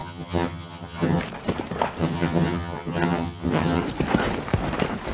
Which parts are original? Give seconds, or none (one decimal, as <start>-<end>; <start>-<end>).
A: 1.2-2.0; 3.8-5.1